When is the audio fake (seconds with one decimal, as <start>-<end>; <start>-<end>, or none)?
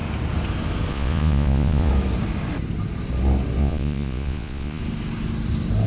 0.9-1.9; 3.6-4.8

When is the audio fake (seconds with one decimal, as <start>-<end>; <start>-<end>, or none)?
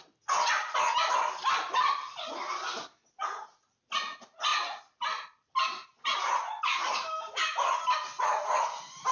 none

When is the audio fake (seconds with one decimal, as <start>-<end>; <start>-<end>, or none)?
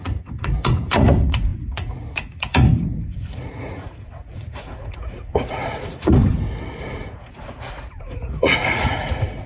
0.0-6.2; 6.8-9.5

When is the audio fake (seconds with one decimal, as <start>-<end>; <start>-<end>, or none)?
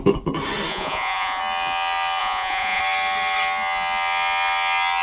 0.7-1.4; 2.2-2.8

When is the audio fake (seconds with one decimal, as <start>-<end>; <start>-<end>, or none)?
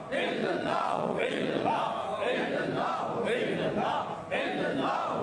0.4-1.7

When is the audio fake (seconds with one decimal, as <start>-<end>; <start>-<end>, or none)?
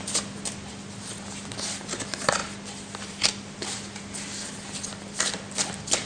none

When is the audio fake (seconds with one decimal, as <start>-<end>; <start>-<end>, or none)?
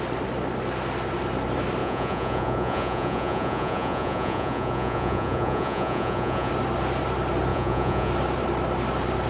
1.8-6.5; 7.5-8.1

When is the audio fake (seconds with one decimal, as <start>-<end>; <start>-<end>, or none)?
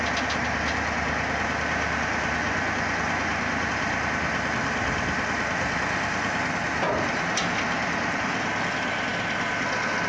2.4-3.7